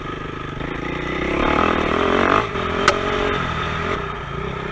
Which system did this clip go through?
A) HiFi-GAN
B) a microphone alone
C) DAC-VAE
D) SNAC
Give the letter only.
B